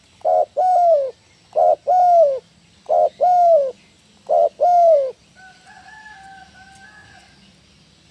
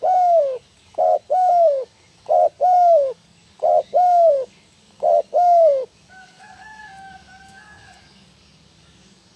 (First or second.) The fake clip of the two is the second